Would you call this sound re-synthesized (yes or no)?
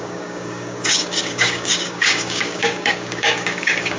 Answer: yes